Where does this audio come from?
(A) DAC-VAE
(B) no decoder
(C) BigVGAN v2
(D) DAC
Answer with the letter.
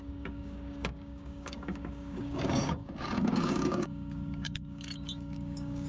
D